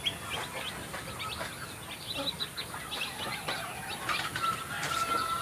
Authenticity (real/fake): real